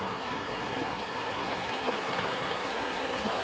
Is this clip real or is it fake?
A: fake